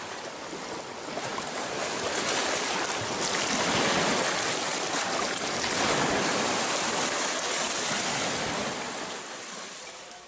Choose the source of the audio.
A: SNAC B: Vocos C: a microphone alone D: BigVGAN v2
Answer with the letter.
C